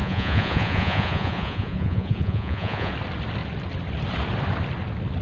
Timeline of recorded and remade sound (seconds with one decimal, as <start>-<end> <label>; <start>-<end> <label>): 0.0-2.9 remade; 2.9-5.2 recorded